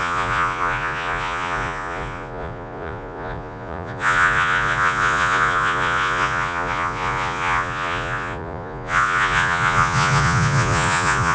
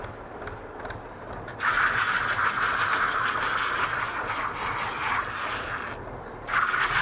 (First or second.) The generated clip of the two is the first